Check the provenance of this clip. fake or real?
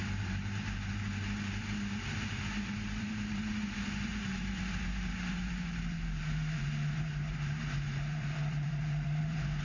fake